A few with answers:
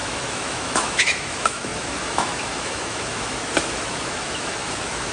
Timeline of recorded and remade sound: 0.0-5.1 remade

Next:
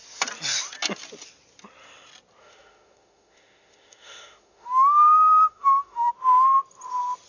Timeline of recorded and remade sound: 0.0-2.4 recorded; 2.4-6.1 remade; 6.1-7.3 recorded

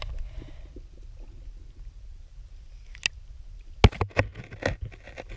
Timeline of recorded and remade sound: 0.0-5.4 recorded